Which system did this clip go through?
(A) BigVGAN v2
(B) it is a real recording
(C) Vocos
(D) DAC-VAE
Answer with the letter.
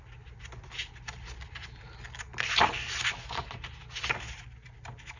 B